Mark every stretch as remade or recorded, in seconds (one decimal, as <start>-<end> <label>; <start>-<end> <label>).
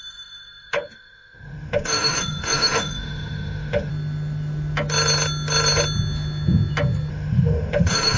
0.0-3.9 remade; 3.9-7.1 recorded; 7.1-8.2 remade